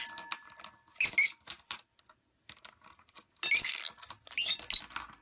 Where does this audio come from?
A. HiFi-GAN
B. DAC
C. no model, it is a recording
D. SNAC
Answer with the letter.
C